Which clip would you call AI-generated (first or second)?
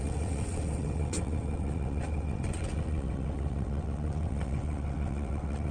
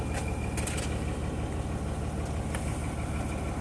first